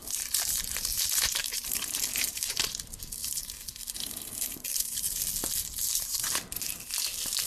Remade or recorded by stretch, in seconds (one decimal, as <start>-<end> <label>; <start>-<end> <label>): 0.0-2.7 remade; 2.7-3.2 recorded; 3.2-5.2 remade; 5.2-5.9 recorded; 5.9-6.9 remade; 6.9-7.5 recorded